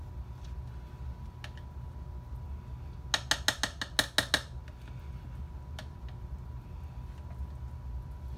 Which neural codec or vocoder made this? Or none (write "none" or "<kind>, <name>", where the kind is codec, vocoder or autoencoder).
none